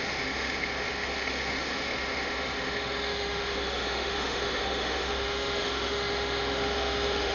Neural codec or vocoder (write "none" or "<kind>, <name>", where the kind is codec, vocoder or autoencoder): autoencoder, DAC-VAE